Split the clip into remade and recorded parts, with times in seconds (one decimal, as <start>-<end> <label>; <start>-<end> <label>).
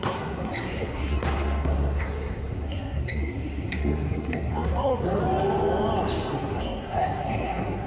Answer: 0.0-5.2 remade; 5.2-6.3 recorded; 6.3-7.9 remade